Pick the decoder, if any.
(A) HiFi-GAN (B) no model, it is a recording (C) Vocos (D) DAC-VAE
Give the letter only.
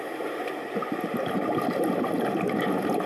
B